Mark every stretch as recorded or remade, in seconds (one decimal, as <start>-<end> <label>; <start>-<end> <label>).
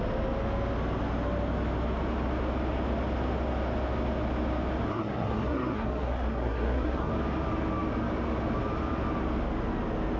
0.0-4.9 recorded; 4.9-7.1 remade; 7.1-10.2 recorded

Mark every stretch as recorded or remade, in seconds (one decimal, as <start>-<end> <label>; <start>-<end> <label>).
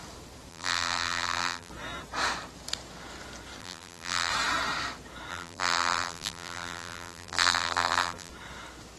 0.0-0.5 recorded; 0.5-1.7 remade; 1.7-3.6 recorded; 3.6-4.3 remade; 4.3-5.3 recorded; 5.3-8.3 remade; 8.3-9.0 recorded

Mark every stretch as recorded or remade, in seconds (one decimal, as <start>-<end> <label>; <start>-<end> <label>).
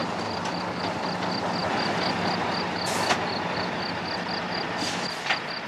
0.0-5.7 recorded